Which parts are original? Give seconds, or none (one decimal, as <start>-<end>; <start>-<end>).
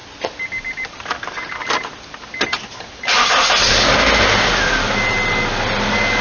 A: 0.0-6.2